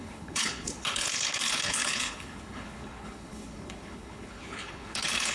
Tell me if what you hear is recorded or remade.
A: remade